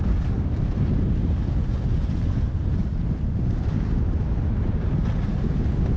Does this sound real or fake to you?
real